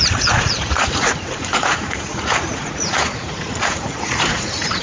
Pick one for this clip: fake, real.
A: fake